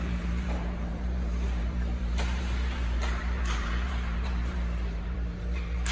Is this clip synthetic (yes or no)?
yes